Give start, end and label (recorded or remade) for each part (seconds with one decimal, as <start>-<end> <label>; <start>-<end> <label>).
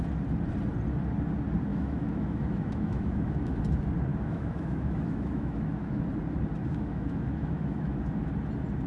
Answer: 0.0-1.7 recorded; 1.7-3.6 remade; 3.6-4.1 recorded; 4.1-6.0 remade; 6.0-6.6 recorded; 6.6-8.2 remade; 8.2-8.9 recorded